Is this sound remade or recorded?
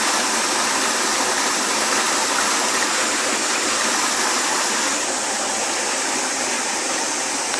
recorded